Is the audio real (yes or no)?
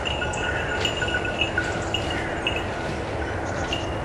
yes